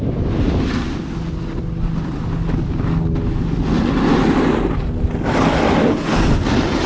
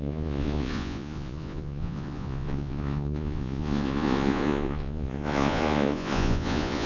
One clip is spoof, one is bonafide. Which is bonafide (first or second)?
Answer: first